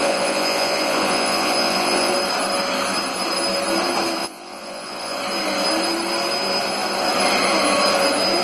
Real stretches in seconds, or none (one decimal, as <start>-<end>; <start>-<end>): 2.1-4.2; 5.2-8.4